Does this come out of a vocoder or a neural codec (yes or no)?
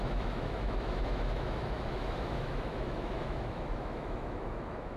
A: yes